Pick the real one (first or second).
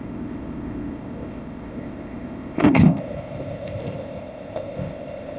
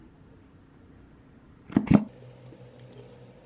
second